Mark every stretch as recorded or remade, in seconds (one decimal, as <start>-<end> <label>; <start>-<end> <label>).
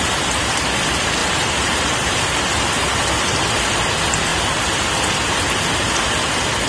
0.0-1.2 recorded; 1.2-3.0 remade; 3.0-6.7 recorded